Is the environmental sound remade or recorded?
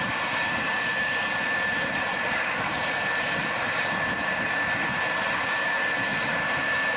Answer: remade